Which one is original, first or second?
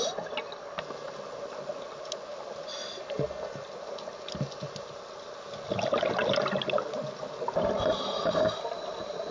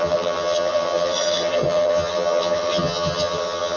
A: first